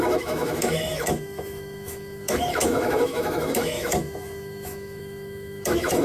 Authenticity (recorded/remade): remade